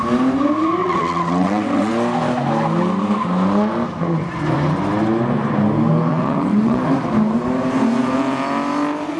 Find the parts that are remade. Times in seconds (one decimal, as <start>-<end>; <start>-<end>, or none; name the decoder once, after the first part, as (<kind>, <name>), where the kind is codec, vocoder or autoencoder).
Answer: 0.8-1.9 (vocoder, WaveNeXt); 6.1-6.8